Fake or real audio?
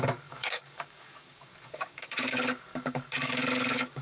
fake